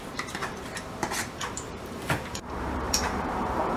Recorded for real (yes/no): no